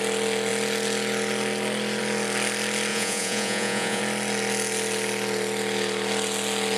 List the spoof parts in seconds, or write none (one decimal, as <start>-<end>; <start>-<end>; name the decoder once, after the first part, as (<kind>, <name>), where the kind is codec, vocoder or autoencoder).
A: 2.9-4.0 (vocoder, Vocos)